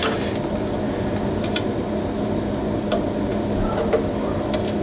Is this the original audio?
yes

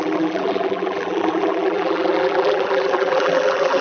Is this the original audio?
no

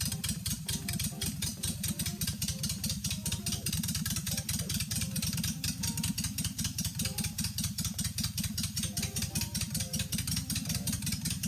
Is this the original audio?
no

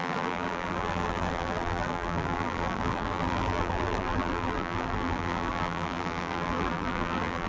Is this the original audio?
no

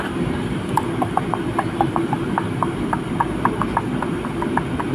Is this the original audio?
yes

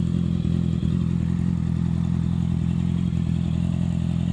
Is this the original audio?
yes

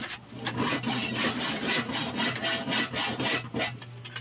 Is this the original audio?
yes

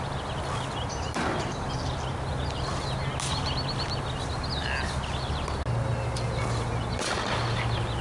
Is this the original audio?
yes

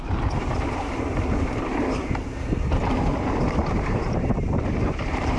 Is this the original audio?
no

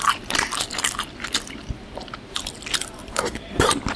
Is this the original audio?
no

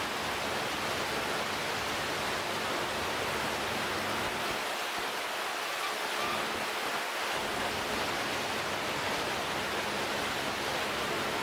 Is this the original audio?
yes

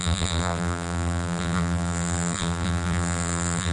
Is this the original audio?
no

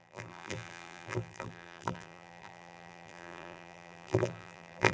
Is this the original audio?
no